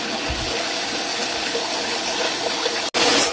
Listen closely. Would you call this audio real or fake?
real